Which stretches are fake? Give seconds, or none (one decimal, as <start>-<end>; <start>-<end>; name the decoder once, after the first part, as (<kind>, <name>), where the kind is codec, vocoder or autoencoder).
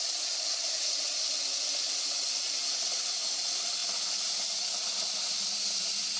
none